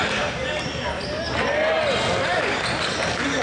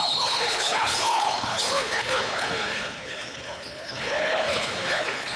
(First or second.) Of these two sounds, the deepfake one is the second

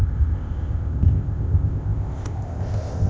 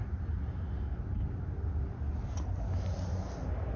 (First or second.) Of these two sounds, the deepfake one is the first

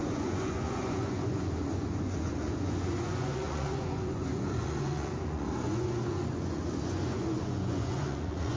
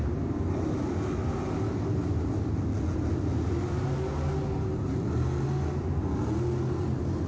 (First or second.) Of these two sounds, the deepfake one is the first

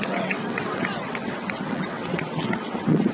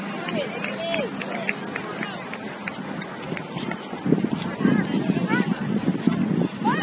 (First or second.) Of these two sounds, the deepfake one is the first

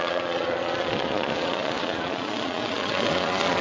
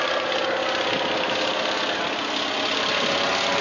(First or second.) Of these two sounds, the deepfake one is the first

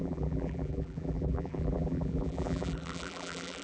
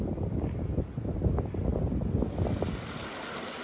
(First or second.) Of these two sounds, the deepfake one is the first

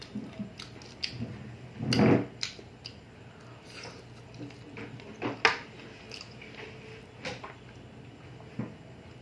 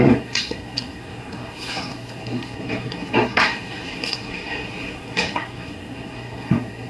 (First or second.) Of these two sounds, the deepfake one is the second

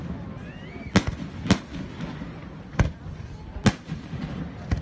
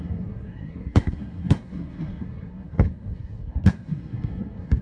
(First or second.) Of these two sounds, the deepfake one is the second